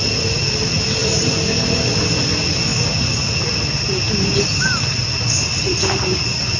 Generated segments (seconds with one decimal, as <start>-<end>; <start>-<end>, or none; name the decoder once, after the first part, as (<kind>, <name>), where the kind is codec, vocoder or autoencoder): 1.0-2.1 (vocoder, BigVGAN v2)